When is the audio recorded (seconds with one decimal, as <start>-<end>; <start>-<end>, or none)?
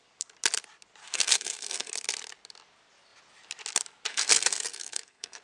0.0-1.0; 1.9-4.1